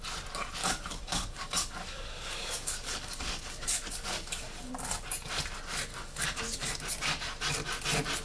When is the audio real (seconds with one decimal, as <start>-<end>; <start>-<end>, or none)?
0.0-0.6; 4.7-5.9; 6.7-8.2